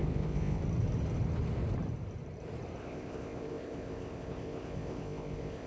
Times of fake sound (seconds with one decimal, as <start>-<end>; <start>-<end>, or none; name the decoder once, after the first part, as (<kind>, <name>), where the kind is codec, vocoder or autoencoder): 0.0-0.6 (codec, ZipCodec); 2.8-5.7

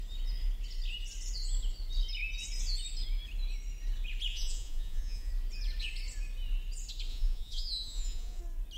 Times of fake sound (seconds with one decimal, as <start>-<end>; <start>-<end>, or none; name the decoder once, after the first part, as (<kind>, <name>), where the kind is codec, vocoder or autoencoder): 4.3-5.3 (vocoder, Vocos); 7.1-8.4

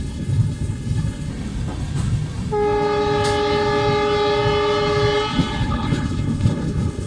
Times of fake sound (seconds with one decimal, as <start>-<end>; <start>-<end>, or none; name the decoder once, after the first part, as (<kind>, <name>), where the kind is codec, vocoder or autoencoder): 0.0-1.3 (codec, HILCodec); 5.6-7.1